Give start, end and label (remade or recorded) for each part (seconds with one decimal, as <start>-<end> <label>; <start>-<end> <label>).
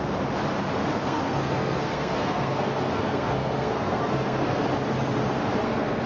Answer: 0.0-0.9 recorded; 0.9-4.6 remade; 4.6-5.5 recorded; 5.5-6.1 remade